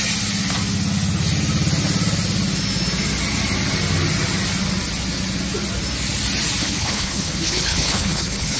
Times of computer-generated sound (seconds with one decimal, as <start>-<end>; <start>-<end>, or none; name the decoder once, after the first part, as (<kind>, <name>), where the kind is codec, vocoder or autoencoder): 6.6-8.6 (codec, HILCodec)